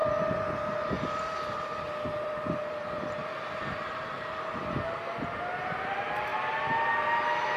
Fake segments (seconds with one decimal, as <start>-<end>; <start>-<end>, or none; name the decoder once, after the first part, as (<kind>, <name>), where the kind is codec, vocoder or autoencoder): 0.0-4.6 (vocoder, BigVGAN v2)